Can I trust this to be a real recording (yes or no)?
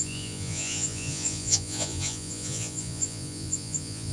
no